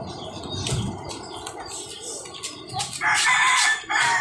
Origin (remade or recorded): recorded